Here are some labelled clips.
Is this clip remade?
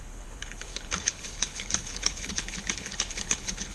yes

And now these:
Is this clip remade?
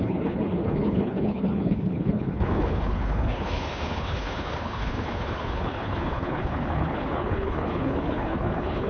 yes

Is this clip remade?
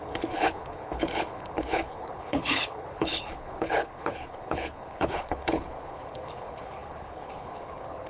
yes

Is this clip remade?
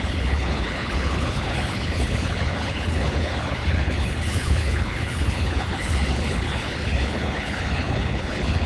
yes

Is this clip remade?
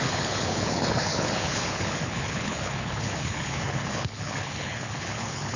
yes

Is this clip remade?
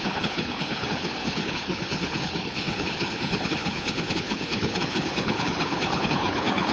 yes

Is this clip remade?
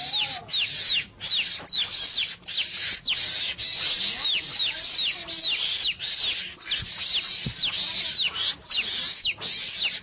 no